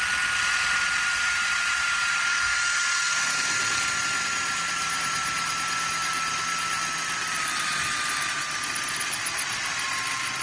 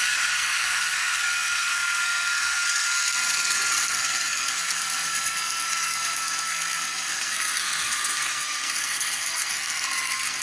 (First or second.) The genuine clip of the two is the first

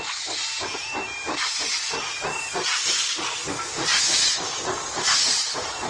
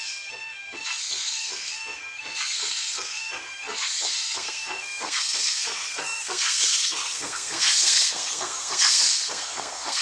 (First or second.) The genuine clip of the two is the first